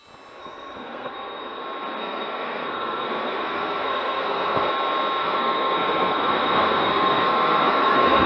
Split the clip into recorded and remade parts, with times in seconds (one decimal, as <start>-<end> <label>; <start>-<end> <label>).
0.0-0.4 recorded; 0.4-1.6 remade; 1.6-2.0 recorded; 2.0-4.7 remade; 4.7-5.2 recorded; 5.2-8.3 remade